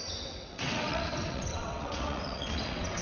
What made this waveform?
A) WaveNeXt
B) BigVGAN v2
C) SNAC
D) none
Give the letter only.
A